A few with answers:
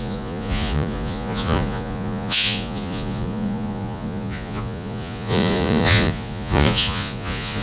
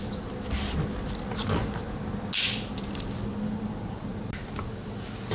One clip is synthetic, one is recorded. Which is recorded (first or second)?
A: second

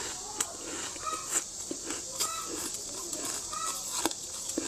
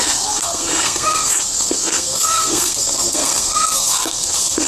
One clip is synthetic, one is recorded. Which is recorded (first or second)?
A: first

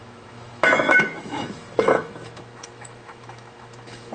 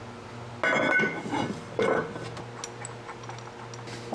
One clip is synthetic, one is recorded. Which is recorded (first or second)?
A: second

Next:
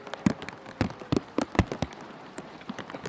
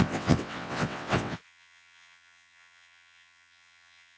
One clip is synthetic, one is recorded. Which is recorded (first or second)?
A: first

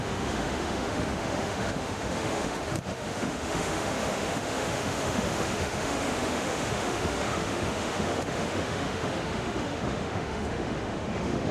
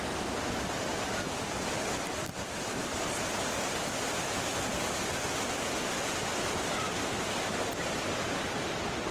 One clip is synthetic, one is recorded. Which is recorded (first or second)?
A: second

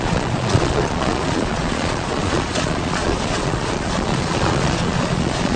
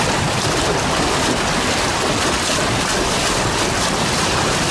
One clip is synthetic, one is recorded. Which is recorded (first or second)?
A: second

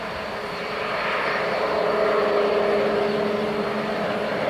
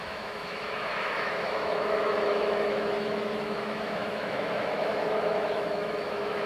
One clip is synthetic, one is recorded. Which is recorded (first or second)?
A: first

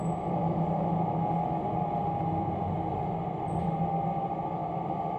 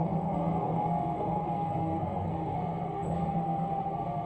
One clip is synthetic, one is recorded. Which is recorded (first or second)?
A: first